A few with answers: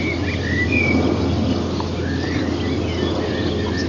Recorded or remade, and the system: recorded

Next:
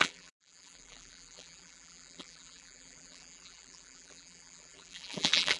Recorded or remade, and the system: remade, vocoder, BigVGAN v2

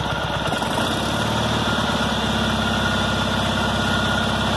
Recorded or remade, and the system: recorded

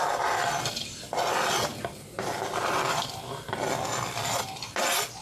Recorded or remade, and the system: recorded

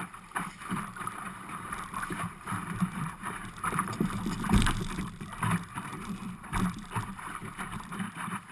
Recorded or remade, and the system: remade, vocoder, BigVGAN v2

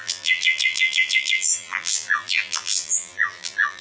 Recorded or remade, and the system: remade, vocoder, BigVGAN v2